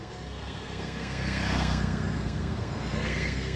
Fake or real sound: fake